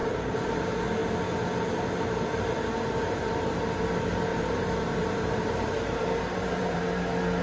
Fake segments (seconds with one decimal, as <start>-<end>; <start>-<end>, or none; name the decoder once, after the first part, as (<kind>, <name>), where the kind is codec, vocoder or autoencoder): 0.0-0.6 (vocoder, BigVGAN v2); 4.3-6.8

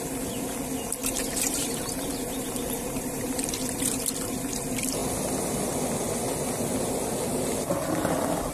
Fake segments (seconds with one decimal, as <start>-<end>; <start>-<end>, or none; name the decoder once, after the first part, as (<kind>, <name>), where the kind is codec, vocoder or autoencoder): 1.0-4.0 (vocoder, BigVGAN v2)